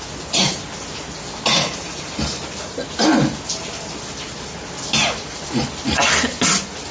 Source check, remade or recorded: recorded